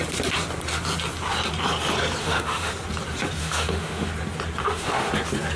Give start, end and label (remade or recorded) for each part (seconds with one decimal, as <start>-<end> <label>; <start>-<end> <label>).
0.0-2.2 recorded; 2.2-2.7 remade; 2.7-3.4 recorded; 3.4-4.1 remade; 4.1-4.6 recorded; 4.6-5.1 remade; 5.1-5.6 recorded